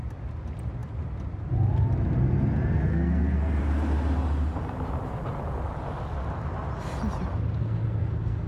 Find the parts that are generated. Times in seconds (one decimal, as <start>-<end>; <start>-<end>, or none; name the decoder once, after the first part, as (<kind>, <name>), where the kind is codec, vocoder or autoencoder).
2.9-3.6 (codec, SNAC); 7.6-8.5